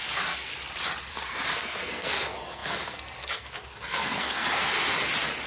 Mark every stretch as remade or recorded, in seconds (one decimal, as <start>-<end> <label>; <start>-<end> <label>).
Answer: 0.0-0.5 remade; 0.5-1.1 recorded; 1.1-4.7 remade; 4.7-5.5 recorded